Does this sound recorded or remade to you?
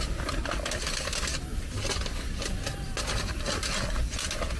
recorded